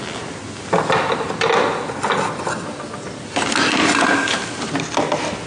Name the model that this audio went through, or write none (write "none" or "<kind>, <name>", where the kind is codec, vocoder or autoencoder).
none